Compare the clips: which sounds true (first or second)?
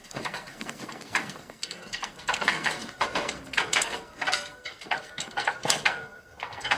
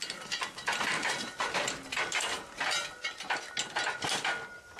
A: second